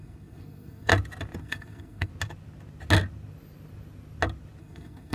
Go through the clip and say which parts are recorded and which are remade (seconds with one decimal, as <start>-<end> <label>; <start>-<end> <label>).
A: 0.0-0.9 remade; 0.9-1.4 recorded; 1.4-2.1 remade; 2.1-4.6 recorded; 4.6-5.1 remade